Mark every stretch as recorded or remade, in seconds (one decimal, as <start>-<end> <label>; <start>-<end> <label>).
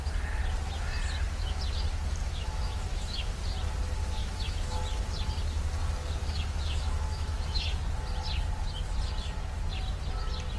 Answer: 0.0-2.2 recorded; 2.2-3.4 remade; 3.4-4.2 recorded; 4.2-4.8 remade; 4.8-6.2 recorded; 6.2-7.8 remade; 7.8-10.6 recorded